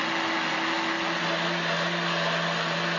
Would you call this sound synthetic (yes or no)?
no